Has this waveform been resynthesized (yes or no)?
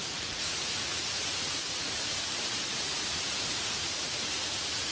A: yes